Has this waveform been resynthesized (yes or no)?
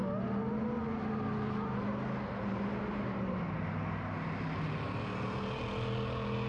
no